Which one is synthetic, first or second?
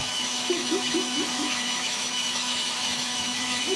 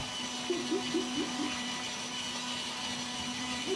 first